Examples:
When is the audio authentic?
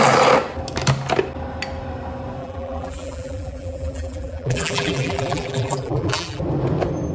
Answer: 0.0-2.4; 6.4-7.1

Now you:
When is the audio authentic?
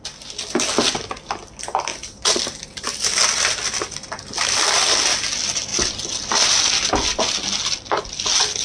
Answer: 0.0-1.9; 2.4-8.6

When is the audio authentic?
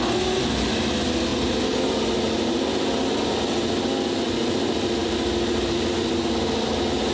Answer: 0.0-5.0; 5.6-7.1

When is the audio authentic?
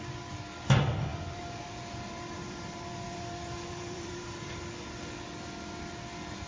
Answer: 0.0-1.1; 4.7-6.5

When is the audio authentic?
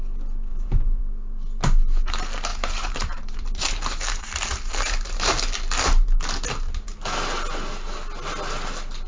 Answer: 0.0-0.5; 1.0-2.5; 5.4-9.1